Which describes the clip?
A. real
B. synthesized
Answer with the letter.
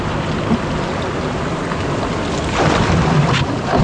A